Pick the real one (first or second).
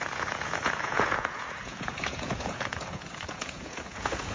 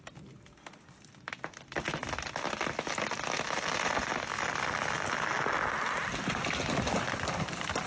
second